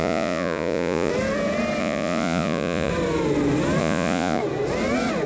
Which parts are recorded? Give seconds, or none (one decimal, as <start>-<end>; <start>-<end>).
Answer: 1.1-1.8; 2.9-3.8; 4.4-5.3